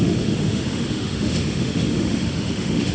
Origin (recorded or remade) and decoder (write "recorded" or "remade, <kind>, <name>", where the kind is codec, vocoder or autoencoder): remade, autoencoder, DAC-VAE